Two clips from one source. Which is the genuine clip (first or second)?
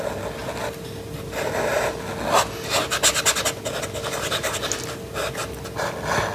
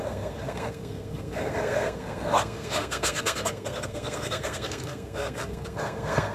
first